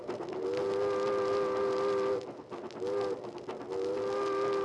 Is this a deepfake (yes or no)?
no